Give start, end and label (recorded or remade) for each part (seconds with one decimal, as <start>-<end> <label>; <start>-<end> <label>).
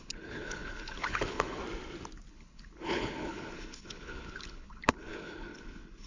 0.0-1.6 remade; 1.6-2.3 recorded; 2.3-6.1 remade